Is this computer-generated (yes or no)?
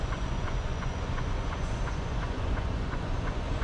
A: yes